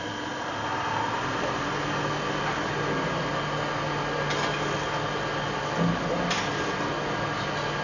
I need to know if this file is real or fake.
real